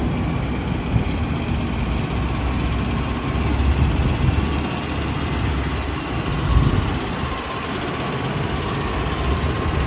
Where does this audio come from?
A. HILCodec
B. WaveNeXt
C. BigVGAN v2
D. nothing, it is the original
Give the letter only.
D